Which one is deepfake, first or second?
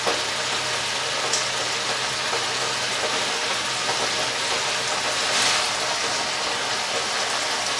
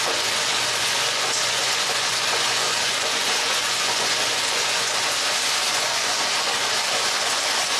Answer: second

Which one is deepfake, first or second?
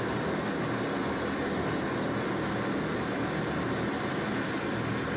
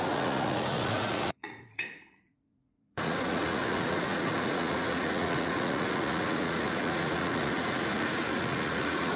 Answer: second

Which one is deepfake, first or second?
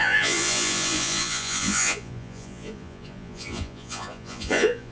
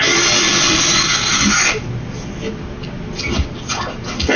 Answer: first